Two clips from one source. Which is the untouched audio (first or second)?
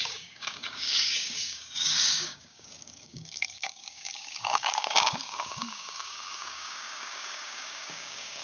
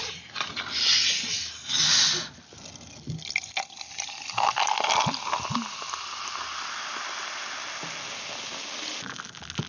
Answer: second